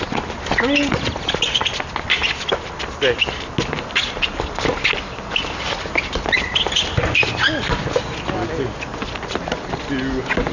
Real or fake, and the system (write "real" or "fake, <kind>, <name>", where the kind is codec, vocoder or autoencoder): real